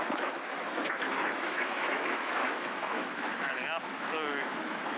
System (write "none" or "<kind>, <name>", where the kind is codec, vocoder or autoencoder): autoencoder, DAC-VAE